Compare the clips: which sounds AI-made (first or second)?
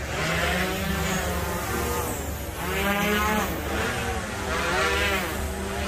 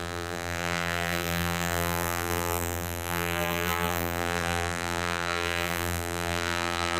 second